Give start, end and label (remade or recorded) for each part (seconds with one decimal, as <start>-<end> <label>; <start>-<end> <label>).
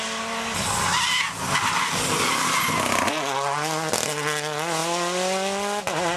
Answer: 0.0-6.2 recorded